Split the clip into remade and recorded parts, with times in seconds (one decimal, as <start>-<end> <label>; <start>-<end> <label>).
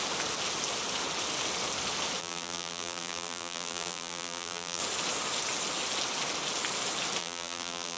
0.0-2.2 recorded; 2.2-4.8 remade; 4.8-7.2 recorded; 7.2-8.0 remade